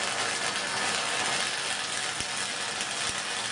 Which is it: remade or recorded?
recorded